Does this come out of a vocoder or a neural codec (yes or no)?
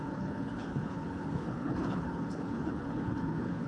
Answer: yes